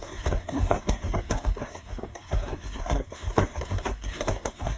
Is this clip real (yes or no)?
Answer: no